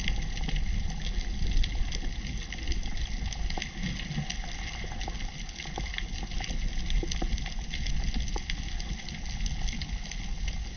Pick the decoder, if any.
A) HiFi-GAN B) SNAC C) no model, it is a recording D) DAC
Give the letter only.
C